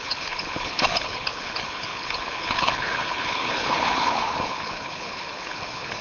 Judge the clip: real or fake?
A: fake